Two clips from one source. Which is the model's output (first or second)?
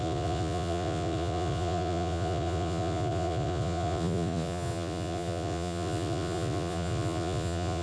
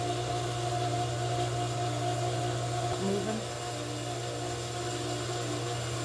first